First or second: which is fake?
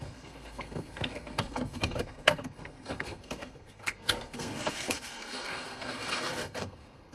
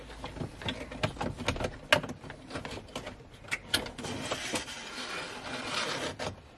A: first